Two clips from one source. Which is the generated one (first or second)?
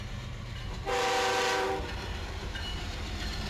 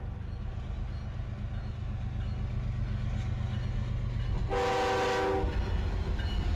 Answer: first